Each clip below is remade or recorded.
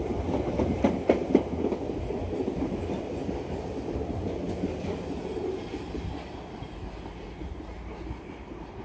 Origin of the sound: recorded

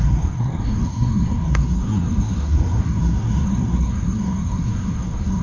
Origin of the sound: remade